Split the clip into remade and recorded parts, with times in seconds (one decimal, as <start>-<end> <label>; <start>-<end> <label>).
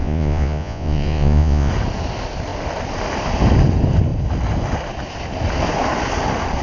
0.0-1.7 remade; 1.7-6.6 recorded